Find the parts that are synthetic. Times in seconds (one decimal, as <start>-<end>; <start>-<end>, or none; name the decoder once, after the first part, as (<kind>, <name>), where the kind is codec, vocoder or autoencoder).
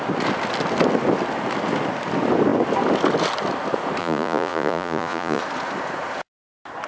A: 4.0-5.4 (vocoder, Vocos)